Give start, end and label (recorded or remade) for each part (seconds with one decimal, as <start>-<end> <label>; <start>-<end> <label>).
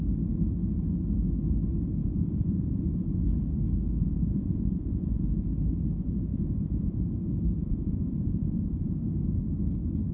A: 0.0-2.0 recorded; 2.0-2.8 remade; 2.8-4.0 recorded; 4.0-5.2 remade; 5.2-6.3 recorded; 6.3-7.0 remade; 7.0-7.6 recorded; 7.6-8.9 remade; 8.9-10.1 recorded